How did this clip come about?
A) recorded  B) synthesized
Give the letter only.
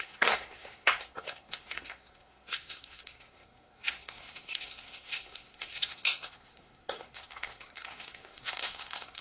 B